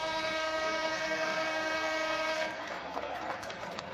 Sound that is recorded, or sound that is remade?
remade